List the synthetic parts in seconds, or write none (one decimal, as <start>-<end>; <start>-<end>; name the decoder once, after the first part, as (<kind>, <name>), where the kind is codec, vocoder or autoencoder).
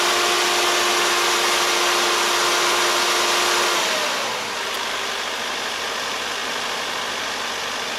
none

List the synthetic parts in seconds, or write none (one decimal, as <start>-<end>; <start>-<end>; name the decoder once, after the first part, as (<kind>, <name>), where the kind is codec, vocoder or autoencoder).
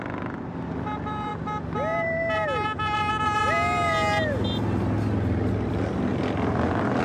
0.0-1.3 (vocoder, BigVGAN v2); 5.5-6.1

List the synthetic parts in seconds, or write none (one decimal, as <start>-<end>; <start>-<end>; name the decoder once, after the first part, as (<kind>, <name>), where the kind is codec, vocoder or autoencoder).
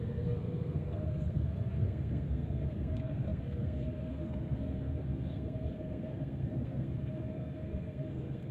0.0-8.5 (codec, SNAC)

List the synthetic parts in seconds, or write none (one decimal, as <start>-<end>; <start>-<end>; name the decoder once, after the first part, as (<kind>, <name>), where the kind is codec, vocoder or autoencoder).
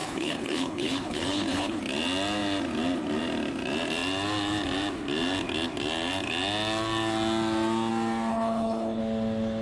0.0-1.8 (codec, HILCodec); 8.3-9.0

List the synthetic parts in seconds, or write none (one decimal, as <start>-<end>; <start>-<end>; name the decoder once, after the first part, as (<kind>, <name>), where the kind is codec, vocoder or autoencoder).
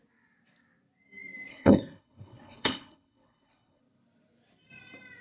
1.5-3.8 (codec, HILCodec)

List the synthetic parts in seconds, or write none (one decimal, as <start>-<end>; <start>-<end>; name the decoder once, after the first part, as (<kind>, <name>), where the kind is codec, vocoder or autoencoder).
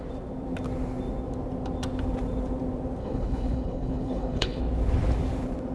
3.0-4.6 (codec, HILCodec)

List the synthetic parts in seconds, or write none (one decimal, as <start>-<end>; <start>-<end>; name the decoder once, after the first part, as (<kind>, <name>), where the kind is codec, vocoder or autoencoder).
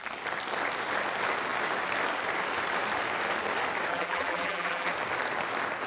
3.9-4.9 (vocoder, BigVGAN v2)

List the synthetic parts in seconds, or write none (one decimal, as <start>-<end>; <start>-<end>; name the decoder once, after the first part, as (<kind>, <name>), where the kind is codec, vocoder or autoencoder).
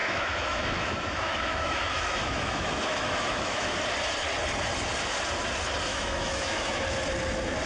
0.0-3.8 (autoencoder, DAC-VAE); 5.9-6.8